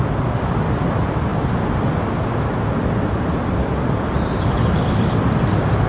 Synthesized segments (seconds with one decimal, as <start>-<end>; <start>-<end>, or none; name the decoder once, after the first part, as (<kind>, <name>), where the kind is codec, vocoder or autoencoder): none